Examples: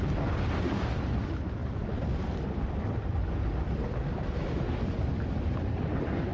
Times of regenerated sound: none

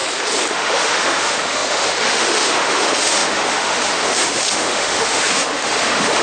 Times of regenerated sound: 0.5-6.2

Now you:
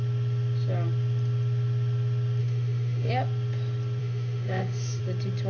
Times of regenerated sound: 2.4-3.1; 4.0-5.0

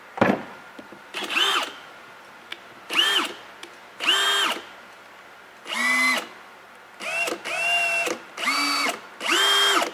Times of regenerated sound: none

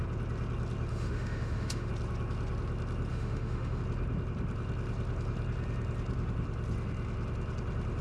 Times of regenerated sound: 0.9-1.9; 3.1-3.8

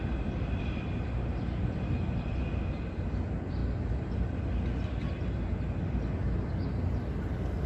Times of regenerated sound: none